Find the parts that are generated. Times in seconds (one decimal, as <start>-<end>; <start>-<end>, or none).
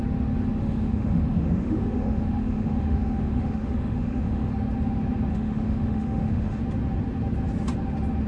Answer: 0.6-4.5; 5.3-6.6